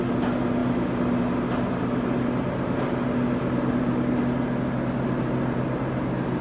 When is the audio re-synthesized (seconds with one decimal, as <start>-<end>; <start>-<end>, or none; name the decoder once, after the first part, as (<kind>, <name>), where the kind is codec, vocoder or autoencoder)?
none